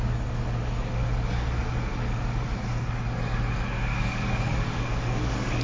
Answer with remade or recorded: remade